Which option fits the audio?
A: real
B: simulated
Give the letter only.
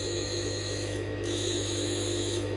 B